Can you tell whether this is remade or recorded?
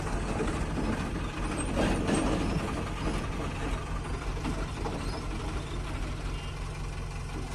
recorded